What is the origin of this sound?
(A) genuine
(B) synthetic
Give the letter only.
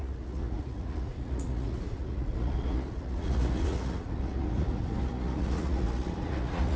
B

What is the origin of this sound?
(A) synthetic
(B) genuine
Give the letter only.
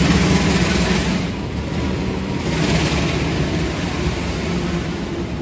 B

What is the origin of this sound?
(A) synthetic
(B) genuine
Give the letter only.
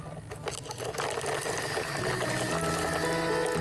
B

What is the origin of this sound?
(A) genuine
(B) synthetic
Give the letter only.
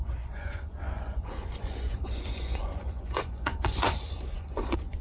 B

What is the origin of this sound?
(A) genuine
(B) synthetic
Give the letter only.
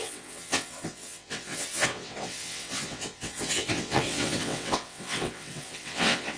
B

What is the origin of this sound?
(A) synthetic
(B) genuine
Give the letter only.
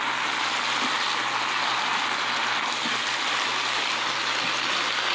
B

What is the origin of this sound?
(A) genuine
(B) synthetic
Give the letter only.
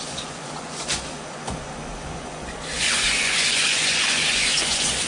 B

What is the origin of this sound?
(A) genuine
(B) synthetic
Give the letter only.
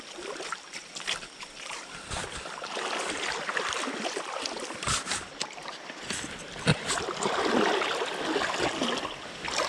A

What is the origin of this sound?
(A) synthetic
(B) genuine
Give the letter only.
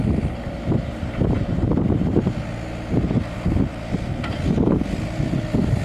B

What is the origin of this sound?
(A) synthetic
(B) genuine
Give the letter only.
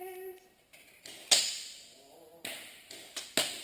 B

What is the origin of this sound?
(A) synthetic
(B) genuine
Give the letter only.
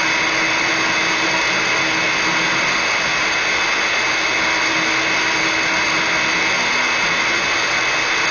B